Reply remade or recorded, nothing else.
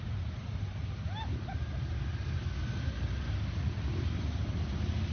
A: recorded